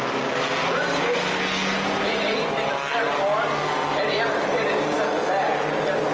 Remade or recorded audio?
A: recorded